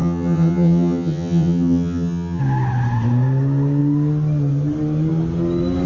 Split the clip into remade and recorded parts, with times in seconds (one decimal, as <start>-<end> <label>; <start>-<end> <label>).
0.0-2.4 remade; 2.4-5.9 recorded